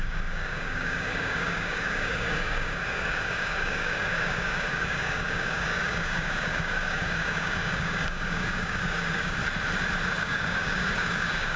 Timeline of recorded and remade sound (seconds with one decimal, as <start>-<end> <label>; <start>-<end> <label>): 0.0-9.4 remade; 9.4-10.2 recorded; 10.2-11.6 remade

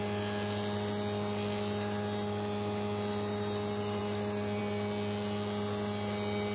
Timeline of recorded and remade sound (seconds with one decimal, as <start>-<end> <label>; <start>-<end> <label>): 0.0-6.5 recorded

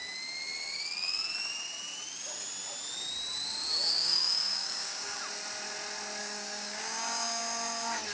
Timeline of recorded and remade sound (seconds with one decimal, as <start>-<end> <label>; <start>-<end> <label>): 0.0-3.9 recorded; 3.9-5.2 remade; 5.2-6.2 recorded; 6.2-7.4 remade; 7.4-8.1 recorded

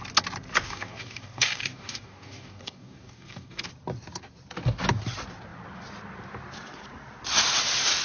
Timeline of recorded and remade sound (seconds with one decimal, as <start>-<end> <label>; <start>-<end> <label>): 0.0-0.5 recorded; 0.5-3.7 remade; 3.7-8.0 recorded

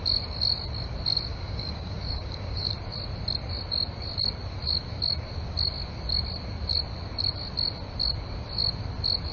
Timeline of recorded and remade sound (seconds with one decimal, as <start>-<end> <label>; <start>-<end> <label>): 0.0-1.3 recorded; 1.3-2.7 remade; 2.7-9.3 recorded